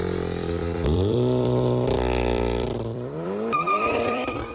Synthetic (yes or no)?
yes